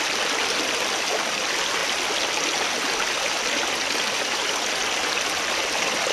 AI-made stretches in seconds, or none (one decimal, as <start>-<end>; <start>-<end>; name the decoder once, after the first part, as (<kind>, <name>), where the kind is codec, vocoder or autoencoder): none